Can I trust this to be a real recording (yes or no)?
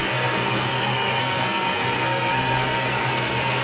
no